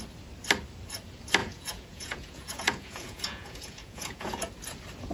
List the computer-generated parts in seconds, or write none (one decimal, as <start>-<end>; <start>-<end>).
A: 1.4-4.5